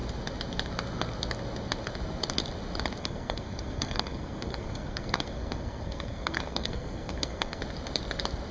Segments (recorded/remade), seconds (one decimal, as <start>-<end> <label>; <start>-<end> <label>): 0.0-3.0 recorded; 3.0-7.6 remade; 7.6-8.5 recorded